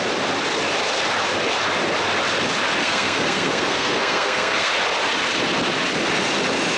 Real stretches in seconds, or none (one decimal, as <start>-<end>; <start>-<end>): 0.0-2.8; 4.7-6.8